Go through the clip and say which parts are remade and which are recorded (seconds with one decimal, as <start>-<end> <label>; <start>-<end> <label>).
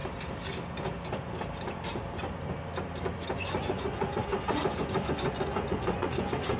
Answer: 0.0-3.3 recorded; 3.3-6.6 remade